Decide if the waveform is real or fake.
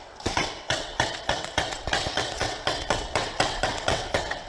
fake